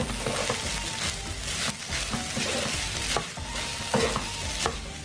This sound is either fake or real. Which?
real